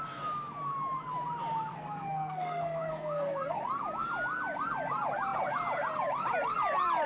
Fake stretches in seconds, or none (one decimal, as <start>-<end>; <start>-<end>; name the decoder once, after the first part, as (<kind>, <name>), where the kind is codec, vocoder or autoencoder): 1.7-3.6 (codec, SNAC)